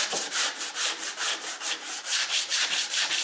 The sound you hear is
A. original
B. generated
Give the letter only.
B